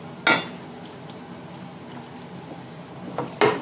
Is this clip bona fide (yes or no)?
yes